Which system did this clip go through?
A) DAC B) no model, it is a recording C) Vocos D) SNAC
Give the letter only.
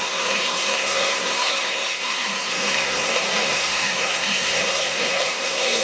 D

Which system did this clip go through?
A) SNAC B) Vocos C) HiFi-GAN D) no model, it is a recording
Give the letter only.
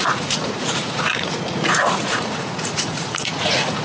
B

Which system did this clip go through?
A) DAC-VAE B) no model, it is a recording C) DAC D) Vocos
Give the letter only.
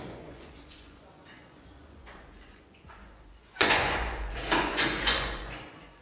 D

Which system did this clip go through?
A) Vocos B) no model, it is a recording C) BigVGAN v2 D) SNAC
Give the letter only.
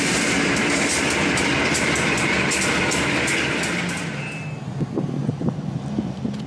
B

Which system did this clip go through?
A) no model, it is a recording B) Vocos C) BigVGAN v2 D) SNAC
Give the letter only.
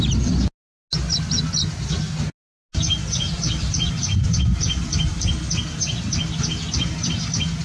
A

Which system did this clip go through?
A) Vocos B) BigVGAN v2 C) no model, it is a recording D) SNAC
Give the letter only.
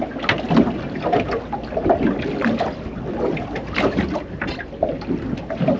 C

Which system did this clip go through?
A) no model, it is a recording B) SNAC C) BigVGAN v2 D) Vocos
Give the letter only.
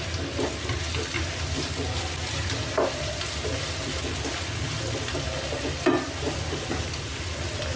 A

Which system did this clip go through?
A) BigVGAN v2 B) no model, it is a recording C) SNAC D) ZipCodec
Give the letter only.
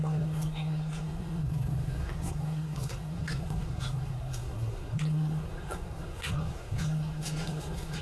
C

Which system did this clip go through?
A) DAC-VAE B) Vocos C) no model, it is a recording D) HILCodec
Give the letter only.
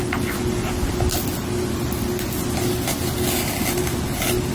C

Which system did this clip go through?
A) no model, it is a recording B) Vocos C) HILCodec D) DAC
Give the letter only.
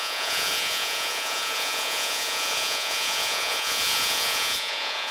B